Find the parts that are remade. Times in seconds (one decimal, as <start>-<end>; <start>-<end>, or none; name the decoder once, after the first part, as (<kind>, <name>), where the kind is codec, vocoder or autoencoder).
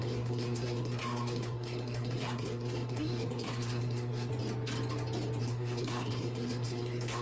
0.0-4.3 (codec, SNAC); 5.4-7.2